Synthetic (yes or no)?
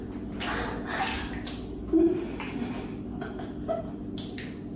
no